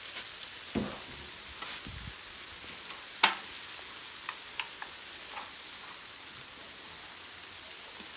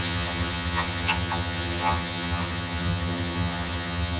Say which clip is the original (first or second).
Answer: first